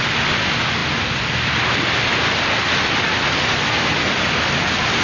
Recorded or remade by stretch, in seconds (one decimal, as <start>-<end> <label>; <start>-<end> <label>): 0.0-5.0 recorded